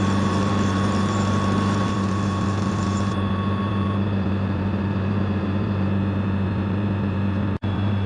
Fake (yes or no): yes